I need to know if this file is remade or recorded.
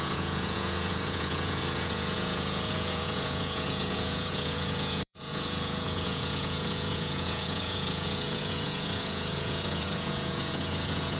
remade